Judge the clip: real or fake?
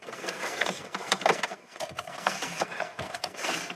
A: fake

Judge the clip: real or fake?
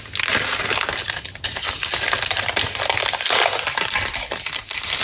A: real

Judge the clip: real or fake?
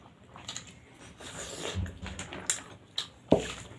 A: real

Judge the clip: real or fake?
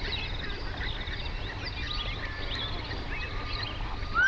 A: real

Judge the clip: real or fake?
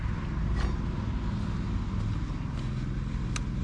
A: real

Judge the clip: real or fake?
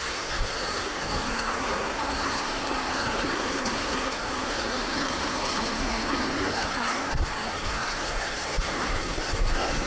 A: fake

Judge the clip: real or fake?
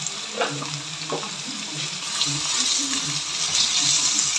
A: real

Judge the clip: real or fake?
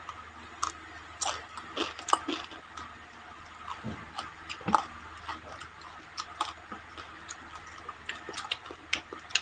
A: real